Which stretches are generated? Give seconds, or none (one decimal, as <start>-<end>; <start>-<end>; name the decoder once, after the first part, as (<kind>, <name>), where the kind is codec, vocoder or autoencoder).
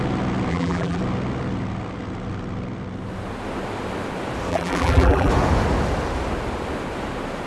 0.5-1.0 (vocoder, BigVGAN v2); 4.5-5.3